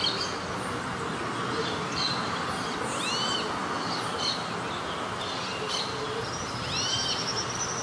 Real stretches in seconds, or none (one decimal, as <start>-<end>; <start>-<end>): 0.0-7.8